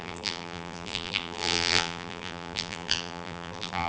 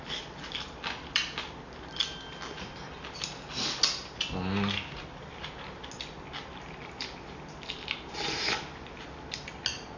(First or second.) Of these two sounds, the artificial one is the first